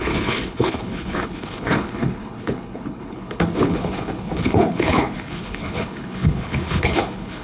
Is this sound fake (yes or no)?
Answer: yes